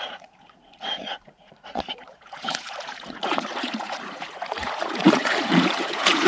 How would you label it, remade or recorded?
remade